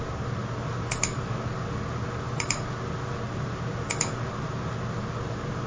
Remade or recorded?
recorded